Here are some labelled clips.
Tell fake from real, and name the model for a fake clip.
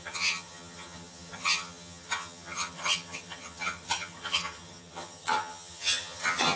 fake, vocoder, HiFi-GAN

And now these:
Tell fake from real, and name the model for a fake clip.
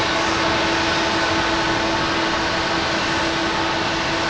real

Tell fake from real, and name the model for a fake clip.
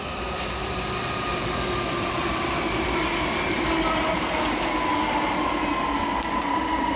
real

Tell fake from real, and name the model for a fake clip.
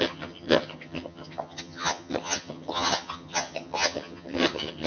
fake, vocoder, HiFi-GAN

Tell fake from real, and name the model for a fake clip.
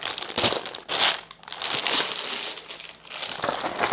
real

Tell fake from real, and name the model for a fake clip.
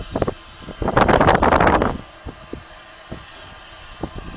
real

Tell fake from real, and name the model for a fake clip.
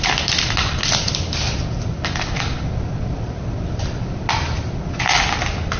real